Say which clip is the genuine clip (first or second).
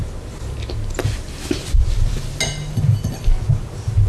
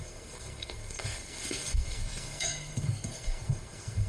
first